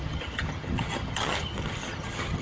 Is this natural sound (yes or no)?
no